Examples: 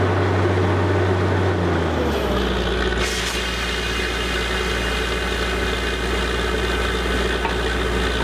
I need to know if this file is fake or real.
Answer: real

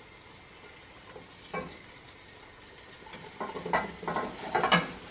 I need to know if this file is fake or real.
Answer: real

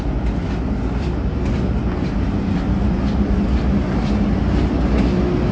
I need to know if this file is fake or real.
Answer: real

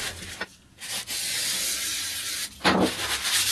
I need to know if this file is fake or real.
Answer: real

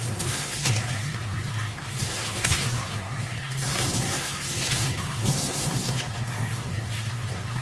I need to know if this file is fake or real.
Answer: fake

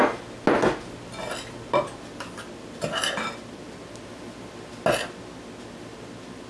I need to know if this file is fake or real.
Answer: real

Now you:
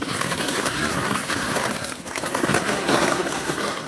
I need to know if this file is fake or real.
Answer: fake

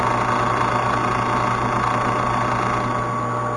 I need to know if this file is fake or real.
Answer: real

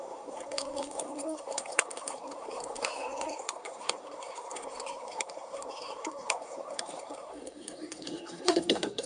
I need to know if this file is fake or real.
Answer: fake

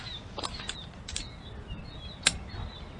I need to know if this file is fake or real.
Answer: real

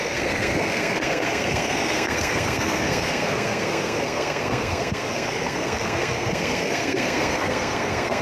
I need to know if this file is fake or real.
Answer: fake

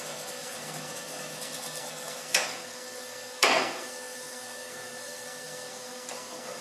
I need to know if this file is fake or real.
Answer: fake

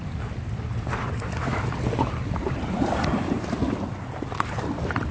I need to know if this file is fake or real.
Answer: real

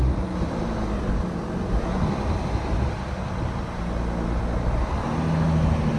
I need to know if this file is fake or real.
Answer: real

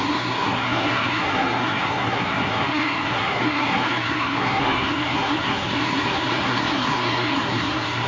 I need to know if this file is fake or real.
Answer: fake